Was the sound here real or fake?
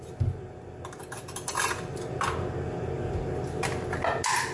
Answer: real